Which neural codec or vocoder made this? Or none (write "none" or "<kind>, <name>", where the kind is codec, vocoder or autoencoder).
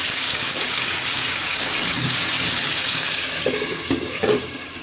codec, DAC